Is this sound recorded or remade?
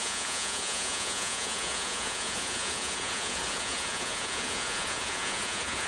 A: remade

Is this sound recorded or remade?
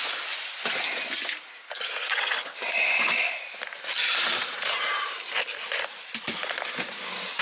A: recorded